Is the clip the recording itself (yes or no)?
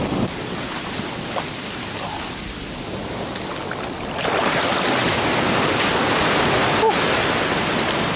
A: yes